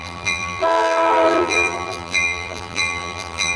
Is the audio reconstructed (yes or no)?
yes